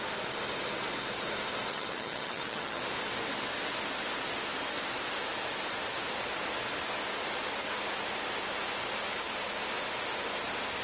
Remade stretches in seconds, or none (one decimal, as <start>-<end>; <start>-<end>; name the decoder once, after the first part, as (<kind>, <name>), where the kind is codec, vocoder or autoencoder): 1.7-2.8 (vocoder, HiFi-GAN)